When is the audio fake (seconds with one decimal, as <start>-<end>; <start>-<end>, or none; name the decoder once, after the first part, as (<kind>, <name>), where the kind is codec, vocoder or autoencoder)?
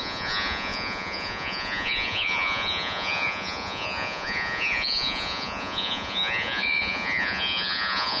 0.0-8.2 (vocoder, Vocos)